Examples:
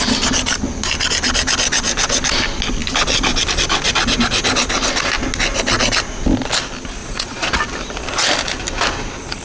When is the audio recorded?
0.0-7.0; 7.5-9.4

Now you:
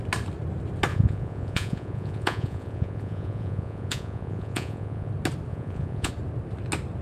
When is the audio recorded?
0.0-0.9; 5.1-5.5; 6.1-7.0

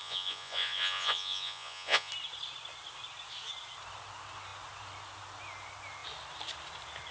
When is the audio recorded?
2.1-7.1